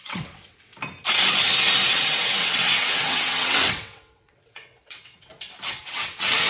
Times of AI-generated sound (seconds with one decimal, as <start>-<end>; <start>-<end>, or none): 0.0-0.7; 1.9-5.3; 5.8-6.5